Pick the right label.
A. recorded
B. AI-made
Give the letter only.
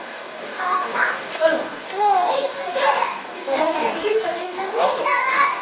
B